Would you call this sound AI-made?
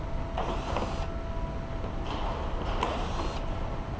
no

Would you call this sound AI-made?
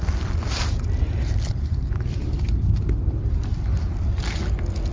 no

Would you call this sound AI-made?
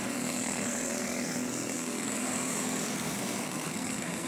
yes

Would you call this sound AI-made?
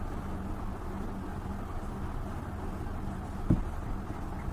no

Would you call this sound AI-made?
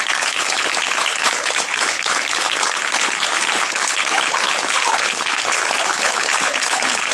yes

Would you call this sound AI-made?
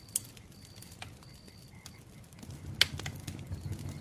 no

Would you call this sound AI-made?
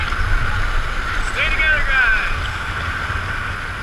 no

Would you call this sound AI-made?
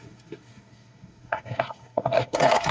yes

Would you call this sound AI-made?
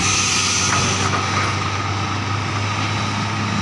no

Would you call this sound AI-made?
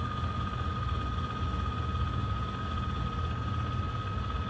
no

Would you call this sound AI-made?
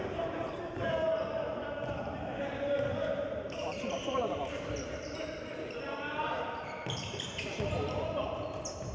yes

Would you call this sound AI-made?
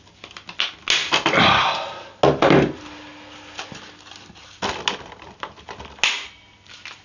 no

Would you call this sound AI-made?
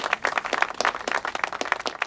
no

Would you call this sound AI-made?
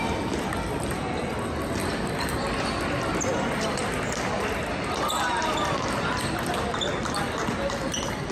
no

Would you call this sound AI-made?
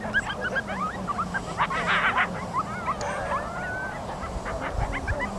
no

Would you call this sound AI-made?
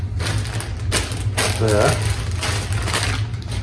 no